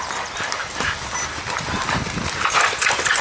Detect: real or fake real